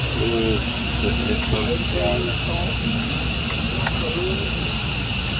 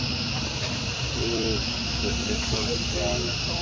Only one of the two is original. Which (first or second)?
first